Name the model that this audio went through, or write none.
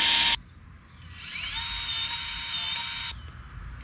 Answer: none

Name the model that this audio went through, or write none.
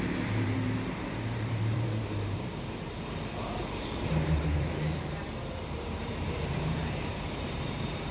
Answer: vocoder, BigVGAN v2